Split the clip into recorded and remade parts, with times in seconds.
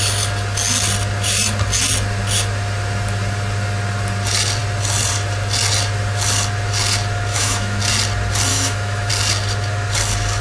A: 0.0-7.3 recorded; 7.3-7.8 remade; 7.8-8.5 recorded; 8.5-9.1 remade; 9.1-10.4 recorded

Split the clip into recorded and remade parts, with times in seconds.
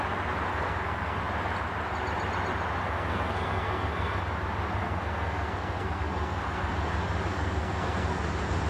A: 0.0-0.5 recorded; 0.5-1.2 remade; 1.2-2.8 recorded; 2.8-4.2 remade; 4.2-4.8 recorded; 4.8-6.7 remade; 6.7-7.3 recorded; 7.3-8.2 remade; 8.2-8.7 recorded